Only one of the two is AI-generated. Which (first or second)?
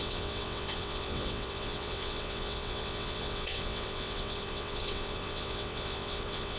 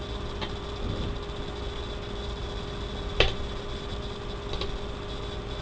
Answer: first